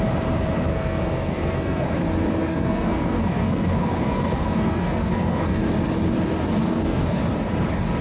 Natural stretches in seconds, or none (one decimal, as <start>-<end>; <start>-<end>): 0.0-0.7; 1.9-2.5; 5.6-6.6; 7.2-8.0